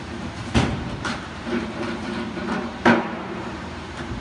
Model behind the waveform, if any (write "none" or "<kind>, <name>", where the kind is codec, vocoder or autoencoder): vocoder, BigVGAN v2